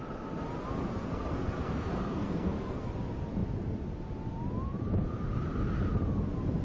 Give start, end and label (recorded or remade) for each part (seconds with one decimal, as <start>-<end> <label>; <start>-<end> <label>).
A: 0.0-0.9 recorded; 0.9-2.9 remade; 2.9-6.6 recorded